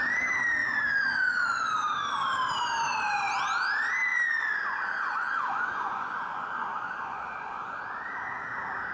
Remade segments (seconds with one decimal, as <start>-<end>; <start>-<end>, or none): 0.6-1.6; 4.1-7.8